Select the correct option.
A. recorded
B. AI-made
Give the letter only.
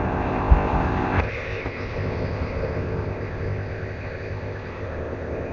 B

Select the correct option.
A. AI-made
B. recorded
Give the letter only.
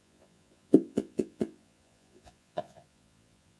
A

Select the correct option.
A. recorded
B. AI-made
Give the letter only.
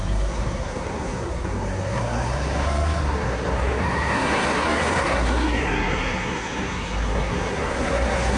B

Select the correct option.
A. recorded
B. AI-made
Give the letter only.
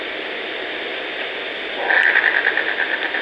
A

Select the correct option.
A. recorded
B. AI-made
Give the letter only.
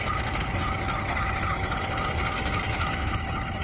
A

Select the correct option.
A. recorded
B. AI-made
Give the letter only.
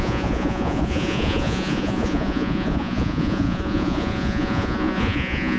B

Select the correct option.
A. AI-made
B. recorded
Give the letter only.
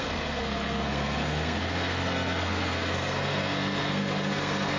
A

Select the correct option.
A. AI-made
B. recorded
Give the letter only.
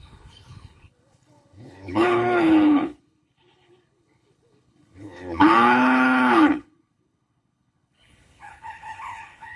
A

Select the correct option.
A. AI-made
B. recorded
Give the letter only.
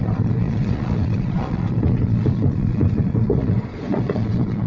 A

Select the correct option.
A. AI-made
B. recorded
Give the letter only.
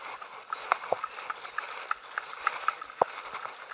B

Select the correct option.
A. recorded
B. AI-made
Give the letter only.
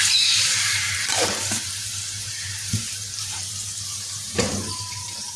B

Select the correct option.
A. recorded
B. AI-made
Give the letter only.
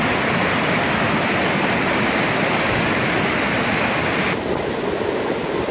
A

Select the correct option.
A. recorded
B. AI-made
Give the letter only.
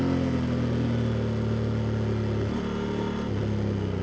A